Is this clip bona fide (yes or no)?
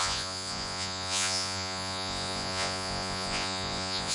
no